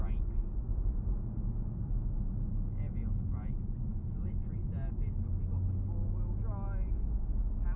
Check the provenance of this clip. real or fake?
real